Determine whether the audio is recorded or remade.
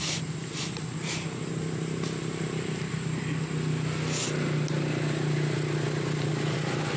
recorded